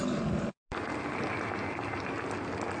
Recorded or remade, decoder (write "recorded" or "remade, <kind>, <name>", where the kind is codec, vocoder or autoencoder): recorded